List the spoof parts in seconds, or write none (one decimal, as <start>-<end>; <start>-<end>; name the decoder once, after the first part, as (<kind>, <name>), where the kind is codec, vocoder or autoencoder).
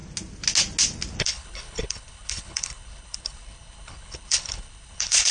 1.2-5.3 (codec, HILCodec)